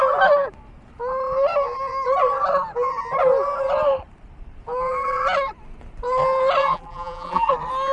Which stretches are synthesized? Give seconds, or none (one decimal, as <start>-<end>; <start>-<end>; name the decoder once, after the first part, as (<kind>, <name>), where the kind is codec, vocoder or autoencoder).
6.6-7.5 (vocoder, BigVGAN v2)